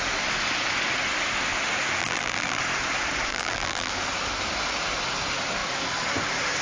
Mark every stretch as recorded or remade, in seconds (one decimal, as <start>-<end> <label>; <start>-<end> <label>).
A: 0.0-2.0 recorded; 2.0-2.6 remade; 2.6-3.3 recorded; 3.3-3.9 remade; 3.9-6.6 recorded